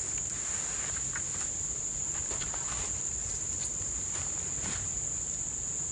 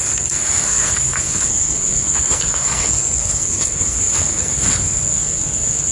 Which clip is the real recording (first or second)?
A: first